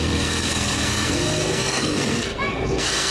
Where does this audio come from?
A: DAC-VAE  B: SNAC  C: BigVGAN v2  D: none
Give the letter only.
B